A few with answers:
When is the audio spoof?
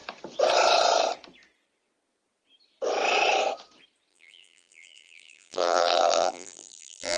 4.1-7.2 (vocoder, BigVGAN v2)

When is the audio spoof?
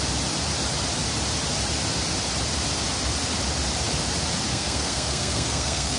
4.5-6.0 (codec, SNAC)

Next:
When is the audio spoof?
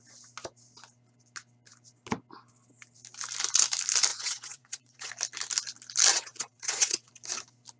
4.1-5.1 (vocoder, WaveNeXt); 6.1-7.1